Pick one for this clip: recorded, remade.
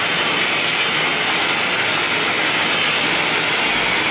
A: recorded